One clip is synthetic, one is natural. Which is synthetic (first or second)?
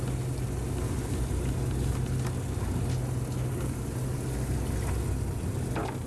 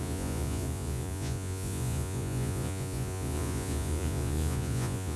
second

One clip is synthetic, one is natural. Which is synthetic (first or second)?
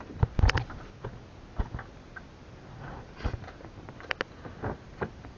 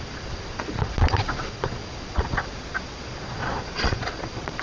second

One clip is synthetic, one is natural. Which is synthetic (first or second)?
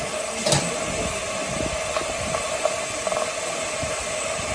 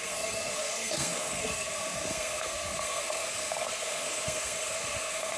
second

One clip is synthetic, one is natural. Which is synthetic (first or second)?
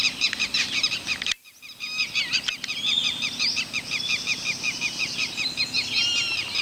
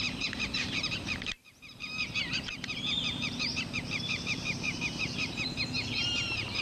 second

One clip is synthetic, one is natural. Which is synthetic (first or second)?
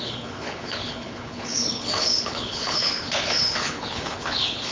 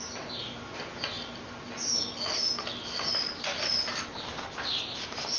first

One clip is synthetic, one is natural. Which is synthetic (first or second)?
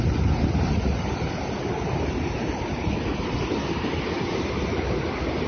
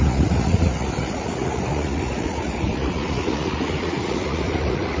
second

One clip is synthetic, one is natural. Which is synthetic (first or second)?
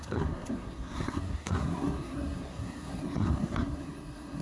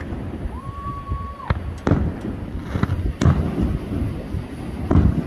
first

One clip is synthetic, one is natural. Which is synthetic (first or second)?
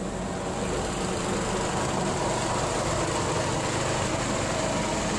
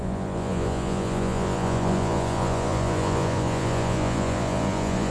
second